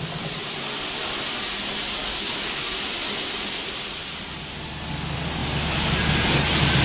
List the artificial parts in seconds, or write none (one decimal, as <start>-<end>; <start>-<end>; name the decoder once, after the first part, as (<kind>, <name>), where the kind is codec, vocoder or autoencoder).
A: 2.0-2.6 (codec, DAC)